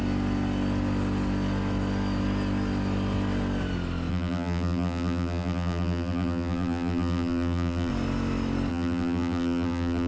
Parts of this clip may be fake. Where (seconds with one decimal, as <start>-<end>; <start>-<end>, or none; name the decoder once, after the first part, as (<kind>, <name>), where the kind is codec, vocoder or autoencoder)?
4.1-7.9 (vocoder, BigVGAN v2); 8.7-10.1